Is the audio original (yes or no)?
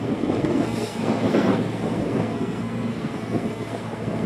no